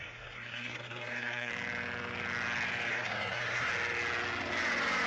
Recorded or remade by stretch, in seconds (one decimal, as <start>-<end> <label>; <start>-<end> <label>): 0.0-1.5 remade; 1.5-2.9 recorded; 2.9-3.7 remade; 3.7-5.1 recorded